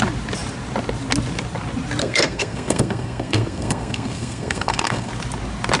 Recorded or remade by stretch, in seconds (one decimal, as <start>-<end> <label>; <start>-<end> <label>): 0.0-2.0 recorded; 2.0-5.1 remade; 5.1-5.8 recorded